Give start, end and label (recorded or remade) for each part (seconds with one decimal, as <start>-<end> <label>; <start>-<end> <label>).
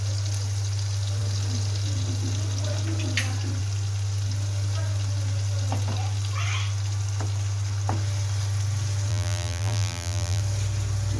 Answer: 0.0-9.1 recorded; 9.1-10.4 remade; 10.4-11.2 recorded